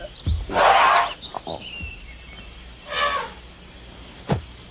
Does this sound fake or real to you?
real